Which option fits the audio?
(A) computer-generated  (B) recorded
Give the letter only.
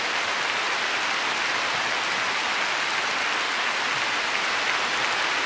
B